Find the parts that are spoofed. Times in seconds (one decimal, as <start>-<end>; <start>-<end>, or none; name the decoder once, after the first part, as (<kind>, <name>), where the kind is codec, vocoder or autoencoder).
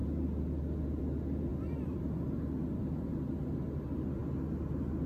1.5-2.0 (vocoder, BigVGAN v2)